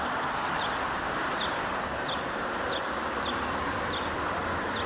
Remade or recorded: remade